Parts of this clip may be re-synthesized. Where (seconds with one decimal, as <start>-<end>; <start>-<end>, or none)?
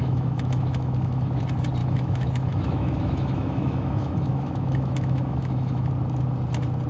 0.0-1.4; 1.8-5.9